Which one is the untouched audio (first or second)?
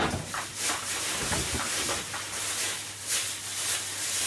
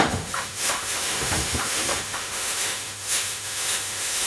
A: first